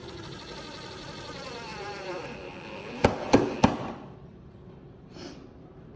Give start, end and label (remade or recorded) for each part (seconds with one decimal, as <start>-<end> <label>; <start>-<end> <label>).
0.0-6.0 recorded